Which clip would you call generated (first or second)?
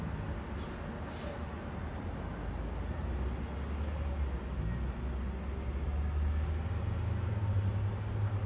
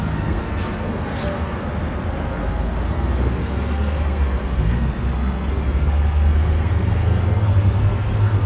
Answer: second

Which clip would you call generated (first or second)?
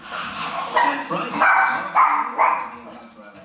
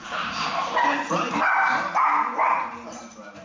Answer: second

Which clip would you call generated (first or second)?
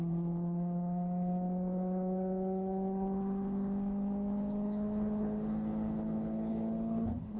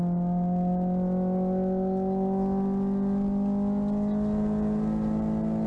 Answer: first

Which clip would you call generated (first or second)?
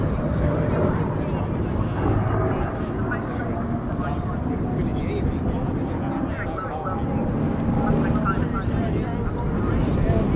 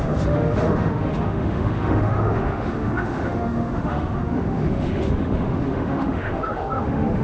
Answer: second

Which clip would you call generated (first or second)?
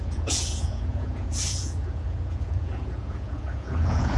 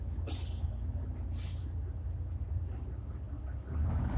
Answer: first